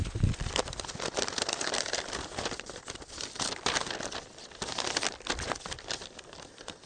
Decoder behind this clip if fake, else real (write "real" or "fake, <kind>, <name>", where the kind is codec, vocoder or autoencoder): real